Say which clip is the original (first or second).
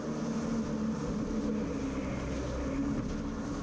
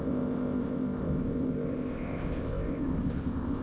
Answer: first